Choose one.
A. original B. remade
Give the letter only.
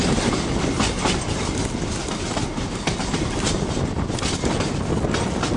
B